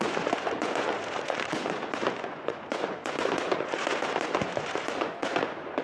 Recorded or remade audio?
remade